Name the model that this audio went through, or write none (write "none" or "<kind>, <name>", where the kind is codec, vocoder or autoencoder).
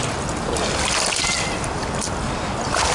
none